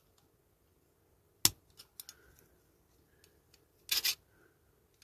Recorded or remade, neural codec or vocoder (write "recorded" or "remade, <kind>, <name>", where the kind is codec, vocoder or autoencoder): recorded